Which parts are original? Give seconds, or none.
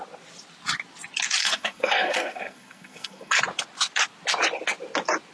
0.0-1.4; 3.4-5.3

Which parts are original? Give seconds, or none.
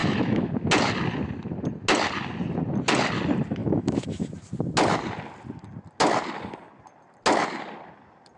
0.5-3.6; 4.3-8.4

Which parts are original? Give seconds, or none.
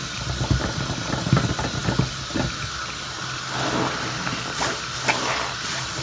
0.0-6.0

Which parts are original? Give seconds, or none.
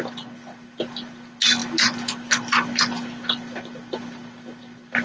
0.0-5.0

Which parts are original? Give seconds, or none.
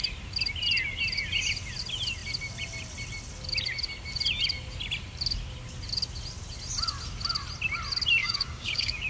0.0-8.2